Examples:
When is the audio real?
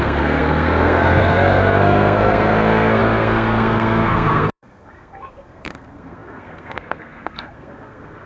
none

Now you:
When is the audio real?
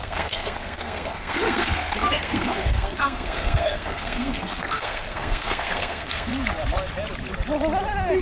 6.3-8.2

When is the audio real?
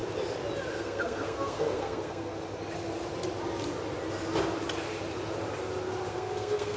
0.0-0.7; 2.3-6.1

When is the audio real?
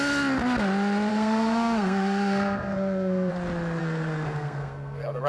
0.0-1.1; 3.3-3.8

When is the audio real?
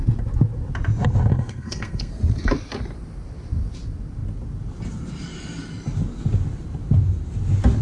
0.0-1.3; 2.1-7.8